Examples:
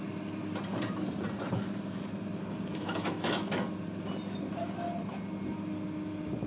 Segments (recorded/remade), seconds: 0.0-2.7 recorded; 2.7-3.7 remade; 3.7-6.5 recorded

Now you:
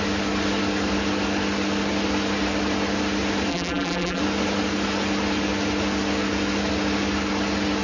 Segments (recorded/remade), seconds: 0.0-3.5 recorded; 3.5-4.2 remade; 4.2-7.8 recorded

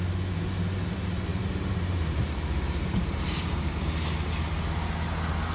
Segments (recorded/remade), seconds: 0.0-1.3 recorded; 1.3-3.7 remade; 3.7-5.5 recorded

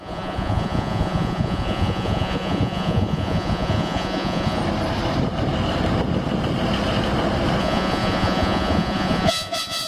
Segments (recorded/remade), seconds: 0.0-4.6 remade; 4.6-7.6 recorded; 7.6-9.9 remade

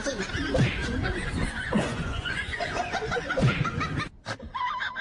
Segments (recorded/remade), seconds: 0.0-0.8 recorded; 0.8-3.8 remade; 3.8-5.0 recorded

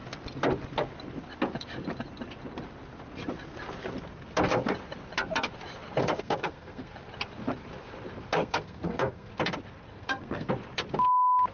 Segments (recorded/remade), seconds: 0.0-6.0 recorded; 6.0-6.9 remade; 6.9-8.4 recorded; 8.4-9.3 remade; 9.3-9.9 recorded; 9.9-10.5 remade; 10.5-11.5 recorded

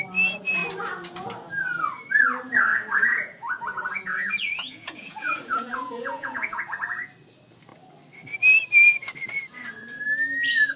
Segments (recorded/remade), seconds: 0.0-2.7 recorded; 2.7-6.8 remade; 6.8-10.8 recorded

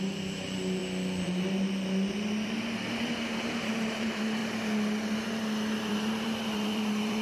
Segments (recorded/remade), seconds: 0.0-0.8 remade; 0.8-3.4 recorded; 3.4-4.4 remade; 4.4-5.9 recorded; 5.9-7.2 remade